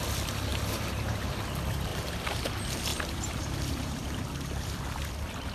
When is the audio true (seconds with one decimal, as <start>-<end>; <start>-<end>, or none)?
0.0-0.5; 1.3-1.9; 2.5-2.9; 4.2-5.5